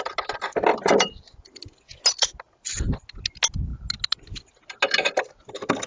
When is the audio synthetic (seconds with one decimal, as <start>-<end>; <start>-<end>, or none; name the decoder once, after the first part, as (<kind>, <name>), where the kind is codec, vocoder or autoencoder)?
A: none

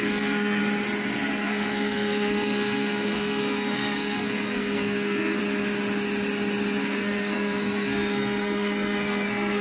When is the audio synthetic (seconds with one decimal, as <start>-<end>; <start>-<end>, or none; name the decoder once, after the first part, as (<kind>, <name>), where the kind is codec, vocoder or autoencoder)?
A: 0.0-0.6 (codec, SNAC); 1.3-5.4; 6.8-9.6

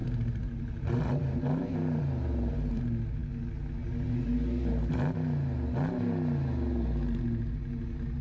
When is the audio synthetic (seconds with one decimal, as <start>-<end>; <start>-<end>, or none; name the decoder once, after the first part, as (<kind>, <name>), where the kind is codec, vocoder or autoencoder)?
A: 0.0-2.8 (vocoder, BigVGAN v2)

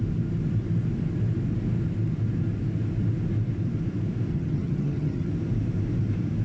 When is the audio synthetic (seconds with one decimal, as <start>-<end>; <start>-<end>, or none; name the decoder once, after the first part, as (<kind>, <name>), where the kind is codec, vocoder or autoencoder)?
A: 4.3-5.3 (vocoder, HiFi-GAN)

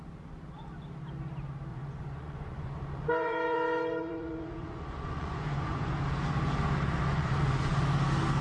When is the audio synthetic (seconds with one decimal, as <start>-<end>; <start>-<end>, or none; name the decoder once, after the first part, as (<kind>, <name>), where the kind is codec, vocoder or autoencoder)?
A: 1.7-5.9 (vocoder, Vocos); 7.1-7.8